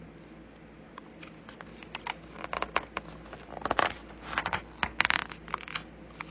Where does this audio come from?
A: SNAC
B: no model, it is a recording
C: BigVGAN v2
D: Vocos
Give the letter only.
B